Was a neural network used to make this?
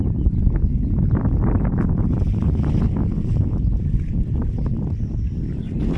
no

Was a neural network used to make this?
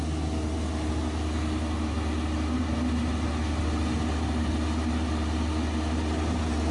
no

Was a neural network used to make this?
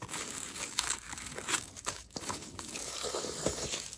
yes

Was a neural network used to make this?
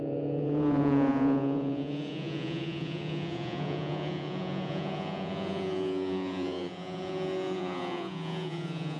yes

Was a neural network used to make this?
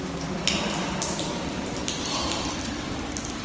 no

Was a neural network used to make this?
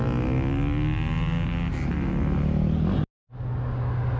no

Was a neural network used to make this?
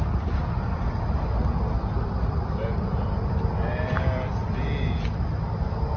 no